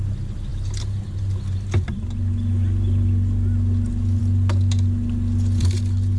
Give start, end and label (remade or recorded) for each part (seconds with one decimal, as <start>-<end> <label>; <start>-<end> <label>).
0.0-6.2 recorded